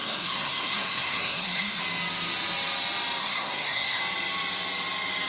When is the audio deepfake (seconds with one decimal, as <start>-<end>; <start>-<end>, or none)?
0.0-1.8; 3.2-4.0